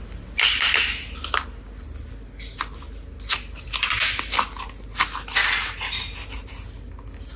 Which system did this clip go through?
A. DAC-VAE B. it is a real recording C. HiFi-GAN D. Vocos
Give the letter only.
B